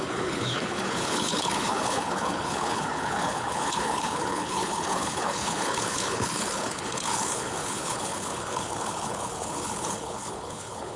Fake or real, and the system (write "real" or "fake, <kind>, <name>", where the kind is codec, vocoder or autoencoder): fake, codec, HILCodec